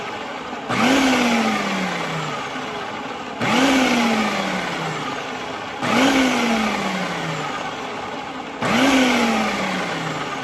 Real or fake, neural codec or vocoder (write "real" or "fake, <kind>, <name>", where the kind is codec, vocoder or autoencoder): real